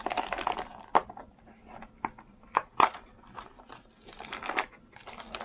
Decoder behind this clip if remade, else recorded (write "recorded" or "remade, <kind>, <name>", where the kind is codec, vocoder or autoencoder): recorded